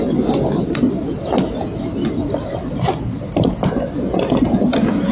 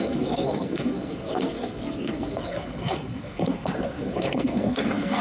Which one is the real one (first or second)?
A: first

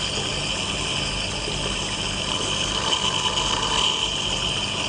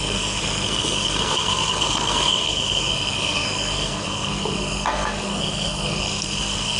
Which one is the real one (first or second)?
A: first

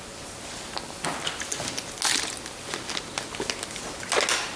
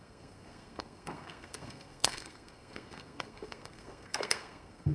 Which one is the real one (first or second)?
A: first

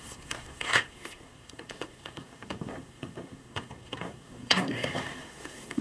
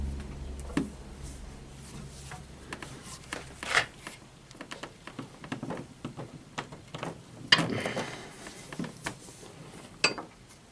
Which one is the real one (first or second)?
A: second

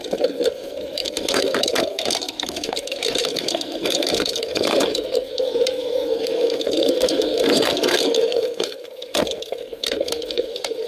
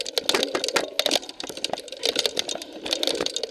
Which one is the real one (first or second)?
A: second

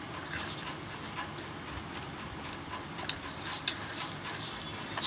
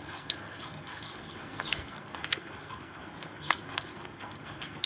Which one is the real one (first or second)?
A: first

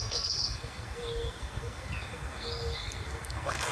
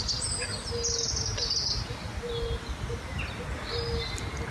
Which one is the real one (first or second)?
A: second